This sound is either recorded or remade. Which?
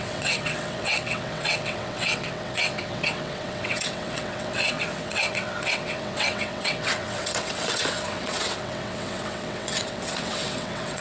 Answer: remade